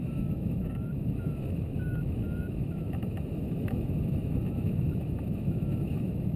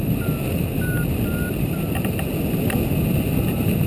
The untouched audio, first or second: second